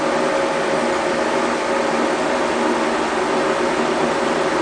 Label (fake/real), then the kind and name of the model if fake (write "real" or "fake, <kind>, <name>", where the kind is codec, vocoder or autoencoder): real